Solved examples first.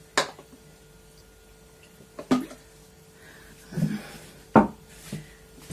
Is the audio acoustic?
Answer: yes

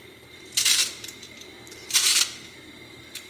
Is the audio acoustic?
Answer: no